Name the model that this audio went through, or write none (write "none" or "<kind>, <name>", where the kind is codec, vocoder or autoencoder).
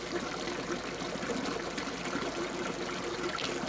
none